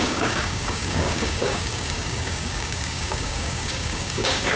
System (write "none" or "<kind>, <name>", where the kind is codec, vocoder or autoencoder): codec, DAC